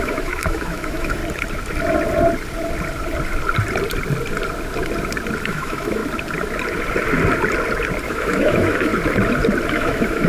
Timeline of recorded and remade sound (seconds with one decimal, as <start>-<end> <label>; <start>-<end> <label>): 0.0-1.2 remade; 1.2-5.4 recorded; 5.4-6.0 remade; 6.0-8.0 recorded; 8.0-8.9 remade; 8.9-9.7 recorded; 9.7-10.3 remade